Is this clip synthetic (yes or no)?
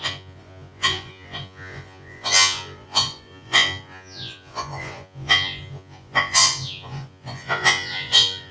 yes